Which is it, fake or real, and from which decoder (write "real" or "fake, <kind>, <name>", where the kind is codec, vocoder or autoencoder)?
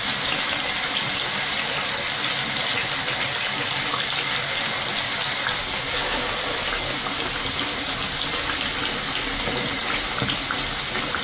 real